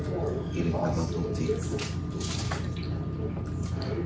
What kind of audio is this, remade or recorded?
recorded